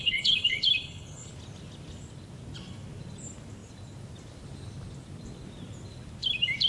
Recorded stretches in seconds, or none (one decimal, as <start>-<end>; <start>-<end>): 1.3-6.7

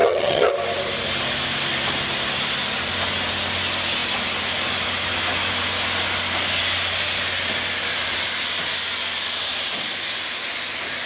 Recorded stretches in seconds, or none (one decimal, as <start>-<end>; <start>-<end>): 0.5-11.1

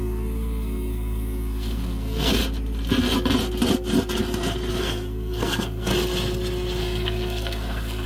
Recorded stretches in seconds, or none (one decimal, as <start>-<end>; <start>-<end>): 2.4-4.7; 5.9-6.8

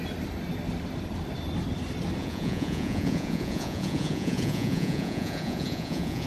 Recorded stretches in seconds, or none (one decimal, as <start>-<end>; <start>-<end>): 0.0-2.2

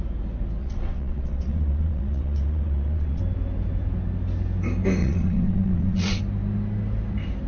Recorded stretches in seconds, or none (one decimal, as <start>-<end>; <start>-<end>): 0.0-0.6; 3.2-5.0; 6.2-7.5

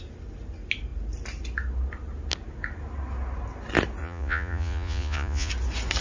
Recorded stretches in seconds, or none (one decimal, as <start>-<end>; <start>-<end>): 0.0-4.0; 5.5-6.0